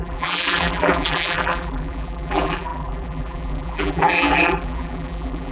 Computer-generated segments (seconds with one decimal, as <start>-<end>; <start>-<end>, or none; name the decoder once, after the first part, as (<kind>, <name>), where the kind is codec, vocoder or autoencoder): 0.0-5.5 (vocoder, BigVGAN v2)